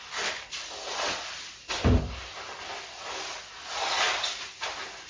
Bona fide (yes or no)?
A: yes